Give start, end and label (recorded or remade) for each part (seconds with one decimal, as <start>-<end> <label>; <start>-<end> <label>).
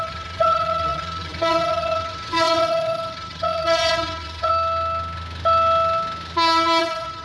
0.0-4.5 remade; 4.5-6.8 recorded; 6.8-7.2 remade